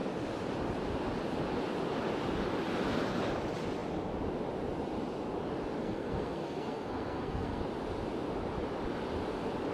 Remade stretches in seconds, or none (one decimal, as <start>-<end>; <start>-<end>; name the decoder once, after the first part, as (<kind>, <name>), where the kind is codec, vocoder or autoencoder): 5.8-7.6 (codec, SNAC)